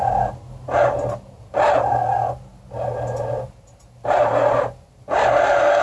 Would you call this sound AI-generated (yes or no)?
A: no